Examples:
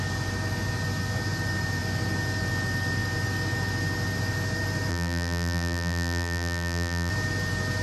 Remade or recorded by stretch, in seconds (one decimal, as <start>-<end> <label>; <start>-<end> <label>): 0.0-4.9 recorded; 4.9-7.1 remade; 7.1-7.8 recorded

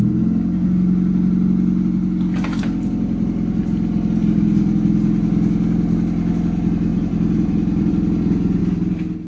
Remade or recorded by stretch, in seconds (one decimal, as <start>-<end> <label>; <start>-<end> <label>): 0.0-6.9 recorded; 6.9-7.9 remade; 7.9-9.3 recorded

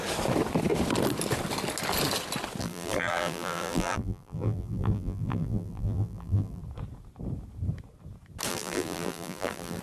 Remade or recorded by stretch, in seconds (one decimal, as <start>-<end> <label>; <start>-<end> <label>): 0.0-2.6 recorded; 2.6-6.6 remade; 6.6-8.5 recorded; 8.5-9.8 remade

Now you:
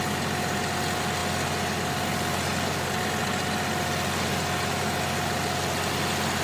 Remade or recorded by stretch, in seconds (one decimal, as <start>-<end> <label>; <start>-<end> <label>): 0.0-6.4 recorded

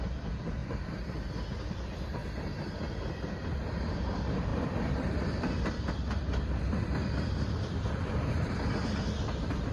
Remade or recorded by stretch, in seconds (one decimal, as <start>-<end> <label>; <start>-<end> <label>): 0.0-0.6 remade; 0.6-1.7 recorded; 1.7-2.2 remade; 2.2-3.1 recorded; 3.1-9.7 remade

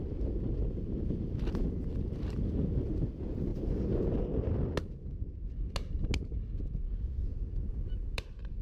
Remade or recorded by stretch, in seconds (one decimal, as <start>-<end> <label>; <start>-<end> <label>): 0.0-7.3 recorded; 7.3-8.2 remade; 8.2-8.6 recorded